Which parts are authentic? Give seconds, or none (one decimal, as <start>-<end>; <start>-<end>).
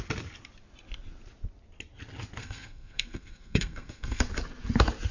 0.0-2.4; 4.2-5.1